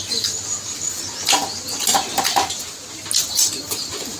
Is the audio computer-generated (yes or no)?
no